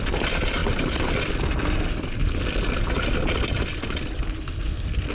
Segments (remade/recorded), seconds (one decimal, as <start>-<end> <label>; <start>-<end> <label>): 0.0-5.1 recorded